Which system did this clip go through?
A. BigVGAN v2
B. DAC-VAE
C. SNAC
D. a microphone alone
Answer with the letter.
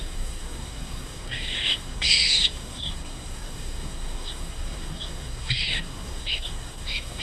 C